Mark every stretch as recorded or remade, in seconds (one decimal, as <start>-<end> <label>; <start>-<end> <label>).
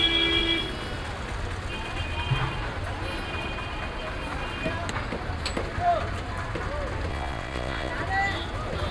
0.0-7.1 recorded; 7.1-7.9 remade; 7.9-8.9 recorded